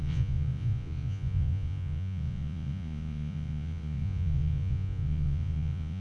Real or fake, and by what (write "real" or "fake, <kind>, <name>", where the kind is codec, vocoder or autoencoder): fake, vocoder, Vocos